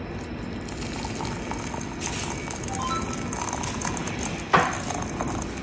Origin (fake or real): real